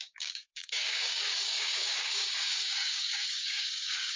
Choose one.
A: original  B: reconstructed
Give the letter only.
B